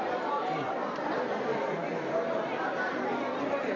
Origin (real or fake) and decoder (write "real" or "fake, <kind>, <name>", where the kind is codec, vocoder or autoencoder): real